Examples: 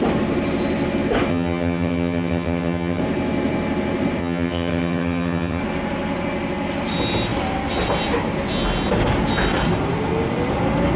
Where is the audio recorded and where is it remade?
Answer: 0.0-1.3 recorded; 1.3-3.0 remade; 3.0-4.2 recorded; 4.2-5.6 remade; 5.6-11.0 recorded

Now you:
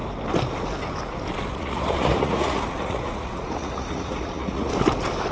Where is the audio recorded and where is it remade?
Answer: 0.0-1.5 recorded; 1.5-4.7 remade; 4.7-5.3 recorded

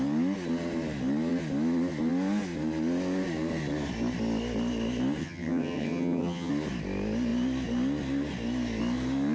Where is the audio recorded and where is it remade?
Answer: 0.0-5.2 recorded; 5.2-6.5 remade; 6.5-9.3 recorded

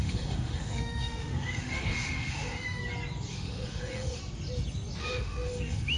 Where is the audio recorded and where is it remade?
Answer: 0.0-2.8 remade; 2.8-3.3 recorded; 3.3-4.2 remade; 4.2-5.0 recorded; 5.0-6.0 remade

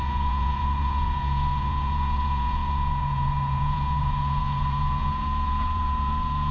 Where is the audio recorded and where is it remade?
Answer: 0.0-6.5 remade

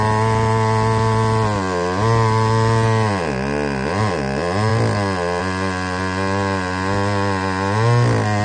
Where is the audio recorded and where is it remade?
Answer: 0.0-8.4 recorded

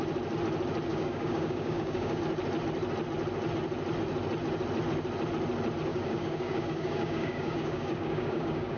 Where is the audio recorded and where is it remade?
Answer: 0.0-0.9 recorded; 0.9-2.2 remade; 2.2-5.9 recorded; 5.9-8.8 remade

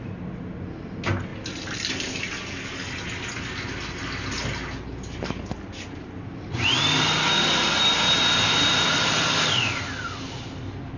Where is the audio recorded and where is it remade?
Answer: 0.0-11.0 recorded